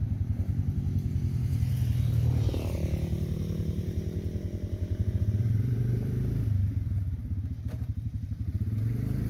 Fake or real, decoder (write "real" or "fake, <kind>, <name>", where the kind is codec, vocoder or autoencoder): fake, vocoder, BigVGAN v2